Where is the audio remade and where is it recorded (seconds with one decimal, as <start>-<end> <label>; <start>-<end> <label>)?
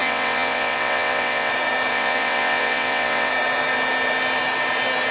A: 0.0-1.5 remade; 1.5-1.9 recorded; 1.9-3.3 remade; 3.3-5.1 recorded